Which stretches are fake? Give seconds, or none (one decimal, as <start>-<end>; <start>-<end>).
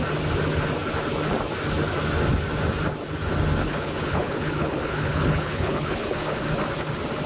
3.6-6.4